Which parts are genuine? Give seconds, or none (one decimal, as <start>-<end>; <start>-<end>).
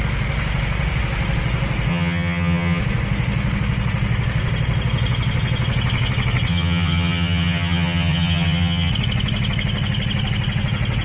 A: 0.0-1.9; 2.8-6.5; 8.9-11.0